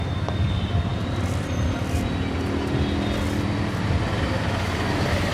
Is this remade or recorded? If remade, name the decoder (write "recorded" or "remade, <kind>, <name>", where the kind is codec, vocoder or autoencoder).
recorded